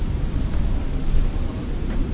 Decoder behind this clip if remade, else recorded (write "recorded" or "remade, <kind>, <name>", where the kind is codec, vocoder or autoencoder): remade, vocoder, BigVGAN v2